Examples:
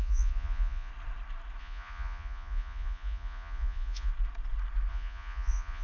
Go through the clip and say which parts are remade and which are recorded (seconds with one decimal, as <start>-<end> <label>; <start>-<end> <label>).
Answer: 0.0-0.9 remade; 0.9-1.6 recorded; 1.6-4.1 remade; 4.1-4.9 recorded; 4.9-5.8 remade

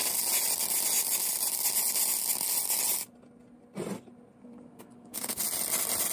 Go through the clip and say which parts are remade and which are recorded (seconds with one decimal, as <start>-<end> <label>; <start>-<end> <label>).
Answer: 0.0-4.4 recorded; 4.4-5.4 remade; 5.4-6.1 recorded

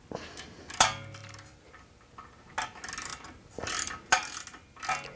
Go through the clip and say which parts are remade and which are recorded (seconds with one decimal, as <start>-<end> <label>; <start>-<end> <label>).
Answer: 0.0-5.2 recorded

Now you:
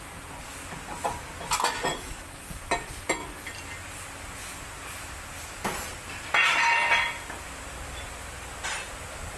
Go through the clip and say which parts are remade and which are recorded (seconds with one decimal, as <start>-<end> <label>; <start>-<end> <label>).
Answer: 0.0-1.9 recorded; 1.9-2.6 remade; 2.6-9.4 recorded